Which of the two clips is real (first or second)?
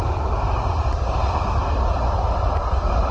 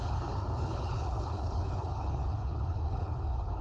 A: first